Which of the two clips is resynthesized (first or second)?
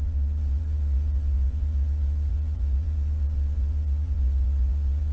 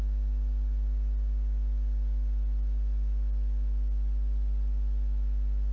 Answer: first